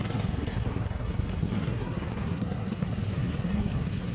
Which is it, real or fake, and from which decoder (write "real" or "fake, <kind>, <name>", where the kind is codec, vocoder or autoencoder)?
fake, codec, SNAC